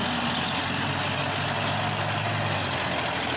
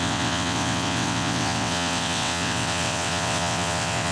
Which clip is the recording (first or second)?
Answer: first